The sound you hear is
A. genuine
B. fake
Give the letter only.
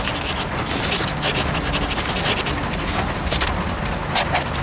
A